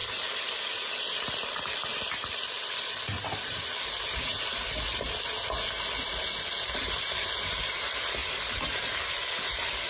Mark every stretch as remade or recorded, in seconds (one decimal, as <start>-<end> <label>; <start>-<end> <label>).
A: 0.0-9.9 recorded